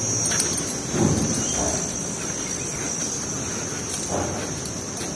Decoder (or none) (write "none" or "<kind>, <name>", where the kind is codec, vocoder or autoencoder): none